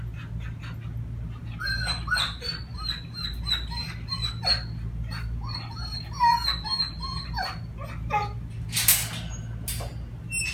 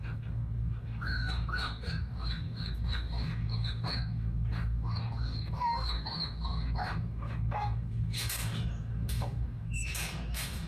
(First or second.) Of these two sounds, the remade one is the second